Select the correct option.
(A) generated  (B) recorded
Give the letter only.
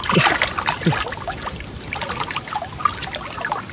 B